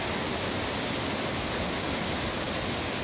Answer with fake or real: real